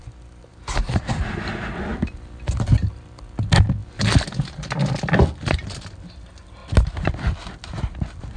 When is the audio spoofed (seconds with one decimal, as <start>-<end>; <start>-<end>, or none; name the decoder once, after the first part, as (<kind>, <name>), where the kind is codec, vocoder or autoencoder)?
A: 0.5-1.5 (vocoder, BigVGAN v2)